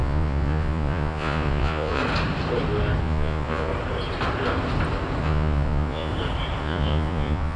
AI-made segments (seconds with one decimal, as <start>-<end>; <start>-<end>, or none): 0.0-2.0; 3.0-3.7; 5.2-6.1; 6.6-7.6